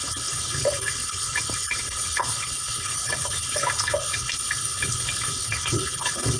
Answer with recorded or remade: remade